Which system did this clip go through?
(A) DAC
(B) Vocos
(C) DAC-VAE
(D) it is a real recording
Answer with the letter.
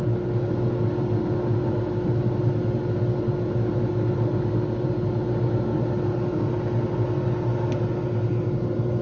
D